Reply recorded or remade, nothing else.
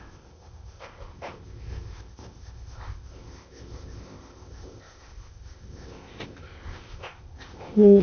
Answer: remade